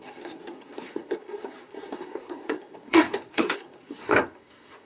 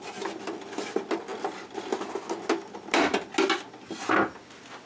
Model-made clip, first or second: first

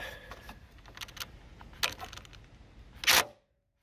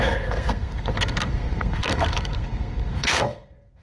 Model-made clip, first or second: second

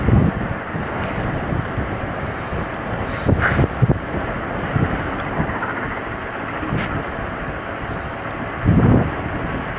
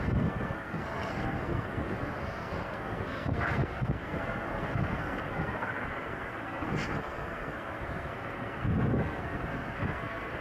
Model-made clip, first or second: second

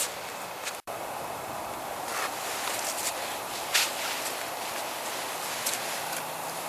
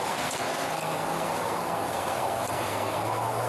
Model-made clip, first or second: second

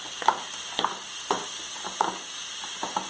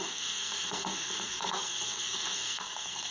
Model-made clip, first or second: second